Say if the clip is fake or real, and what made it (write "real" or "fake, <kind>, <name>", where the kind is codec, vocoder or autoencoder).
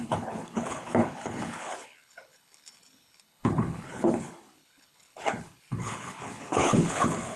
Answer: fake, codec, HILCodec